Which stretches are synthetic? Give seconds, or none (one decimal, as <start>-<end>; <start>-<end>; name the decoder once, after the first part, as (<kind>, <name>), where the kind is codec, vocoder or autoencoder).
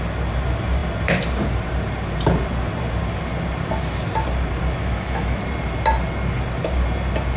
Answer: 4.8-5.4 (autoencoder, DAC-VAE)